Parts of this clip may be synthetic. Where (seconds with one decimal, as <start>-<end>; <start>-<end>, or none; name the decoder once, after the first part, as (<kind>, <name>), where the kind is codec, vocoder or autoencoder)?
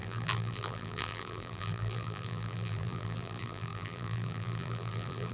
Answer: 0.0-5.3 (vocoder, BigVGAN v2)